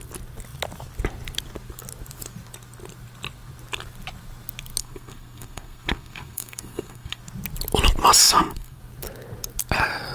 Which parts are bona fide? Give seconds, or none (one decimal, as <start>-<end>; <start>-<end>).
0.0-4.8; 7.2-8.2; 8.8-10.1

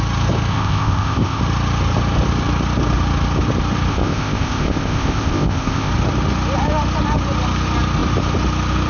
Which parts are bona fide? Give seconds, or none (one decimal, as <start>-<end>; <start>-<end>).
0.0-0.5; 1.4-3.9; 5.9-8.9

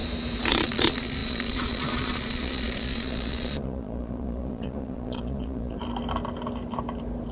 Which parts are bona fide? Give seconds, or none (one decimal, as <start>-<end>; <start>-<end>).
0.0-0.5; 5.8-7.3

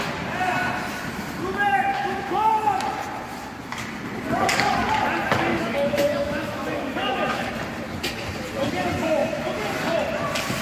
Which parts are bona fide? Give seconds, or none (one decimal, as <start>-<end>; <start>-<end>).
0.0-1.9; 2.5-5.5; 7.5-10.6

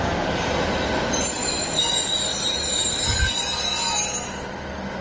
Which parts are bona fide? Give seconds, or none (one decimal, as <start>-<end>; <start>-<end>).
0.0-5.0

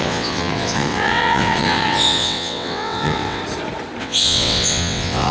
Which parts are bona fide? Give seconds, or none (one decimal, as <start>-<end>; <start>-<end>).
3.4-4.0

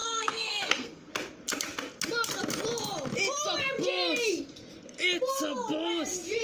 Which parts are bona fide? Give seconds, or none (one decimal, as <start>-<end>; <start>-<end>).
1.1-6.4

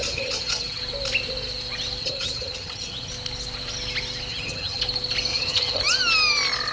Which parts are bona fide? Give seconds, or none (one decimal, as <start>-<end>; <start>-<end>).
0.8-2.0; 3.1-4.3; 4.8-5.3; 5.8-6.7